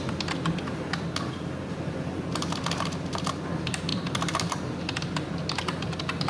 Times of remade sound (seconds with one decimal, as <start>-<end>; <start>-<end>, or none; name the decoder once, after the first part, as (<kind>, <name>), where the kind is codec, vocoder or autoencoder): none